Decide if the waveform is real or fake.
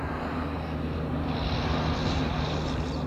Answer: real